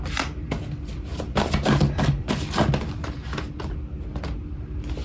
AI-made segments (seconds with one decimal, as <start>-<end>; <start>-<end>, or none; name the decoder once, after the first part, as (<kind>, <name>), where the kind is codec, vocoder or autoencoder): 1.1-3.7 (vocoder, BigVGAN v2)